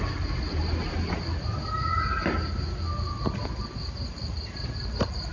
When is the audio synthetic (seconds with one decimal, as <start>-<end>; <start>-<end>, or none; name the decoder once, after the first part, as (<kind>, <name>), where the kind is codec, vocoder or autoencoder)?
none